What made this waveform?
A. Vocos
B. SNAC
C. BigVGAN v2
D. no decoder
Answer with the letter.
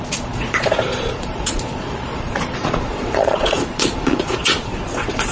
A